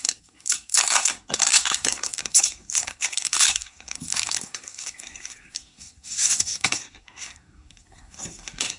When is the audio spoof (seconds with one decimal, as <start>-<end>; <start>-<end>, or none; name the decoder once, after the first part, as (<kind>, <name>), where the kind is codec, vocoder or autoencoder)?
0.0-8.8 (codec, SNAC)